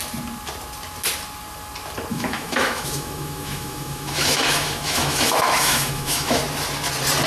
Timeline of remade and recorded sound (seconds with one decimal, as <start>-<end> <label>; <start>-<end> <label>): 0.0-2.1 recorded; 2.1-6.4 remade; 6.4-7.3 recorded